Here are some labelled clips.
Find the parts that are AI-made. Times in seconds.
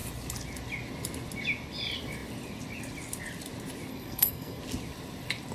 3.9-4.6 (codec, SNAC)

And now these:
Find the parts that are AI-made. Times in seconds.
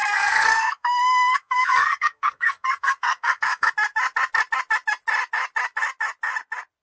0.0-3.7 (codec, SNAC)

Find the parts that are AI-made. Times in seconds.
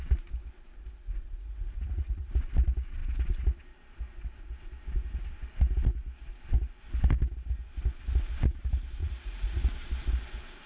1.0-2.3 (vocoder, Vocos); 9.0-9.6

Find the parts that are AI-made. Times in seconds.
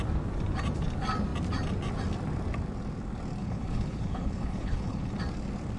3.4-5.1 (codec, HILCodec)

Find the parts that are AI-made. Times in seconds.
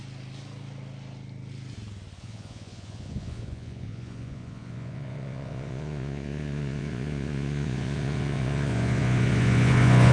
2.2-10.1 (vocoder, Vocos)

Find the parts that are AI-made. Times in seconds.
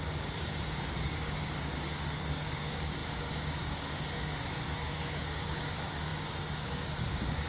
0.0-7.5 (codec, DAC)